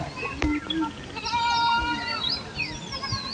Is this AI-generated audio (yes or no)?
no